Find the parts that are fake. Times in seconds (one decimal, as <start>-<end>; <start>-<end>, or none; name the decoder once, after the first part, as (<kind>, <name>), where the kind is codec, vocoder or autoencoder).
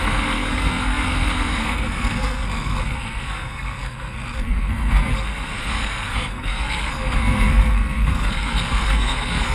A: 0.0-9.5 (codec, SNAC)